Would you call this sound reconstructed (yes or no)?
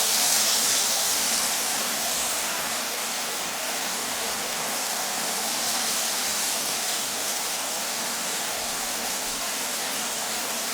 yes